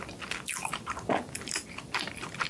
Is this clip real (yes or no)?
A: yes